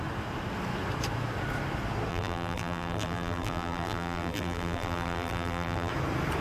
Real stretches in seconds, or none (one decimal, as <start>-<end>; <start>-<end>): 0.0-2.1; 5.9-6.4